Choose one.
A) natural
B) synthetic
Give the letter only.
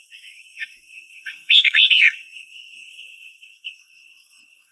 B